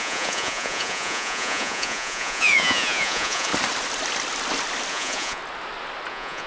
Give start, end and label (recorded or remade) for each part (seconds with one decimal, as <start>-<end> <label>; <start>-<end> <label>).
0.0-3.5 remade; 3.5-4.9 recorded; 4.9-5.4 remade; 5.4-6.1 recorded; 6.1-6.5 remade